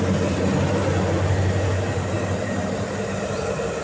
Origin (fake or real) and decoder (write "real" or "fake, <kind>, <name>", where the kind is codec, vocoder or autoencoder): real